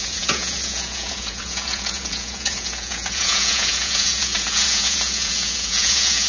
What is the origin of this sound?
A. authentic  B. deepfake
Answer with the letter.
B